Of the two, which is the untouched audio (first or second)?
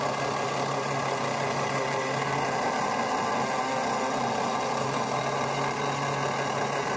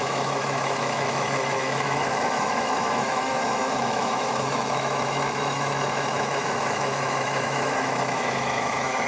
first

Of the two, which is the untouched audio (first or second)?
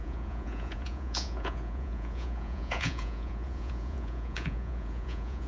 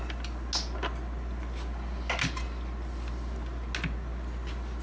second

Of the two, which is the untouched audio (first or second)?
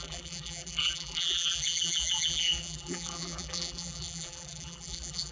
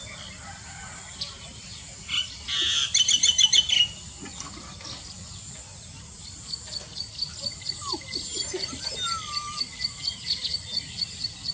second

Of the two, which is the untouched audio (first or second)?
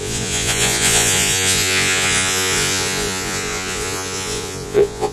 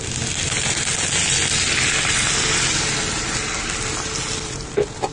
second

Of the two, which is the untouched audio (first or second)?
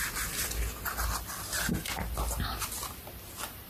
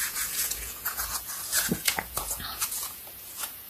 first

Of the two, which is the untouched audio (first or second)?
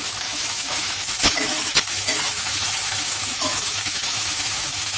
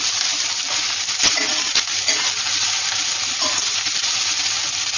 second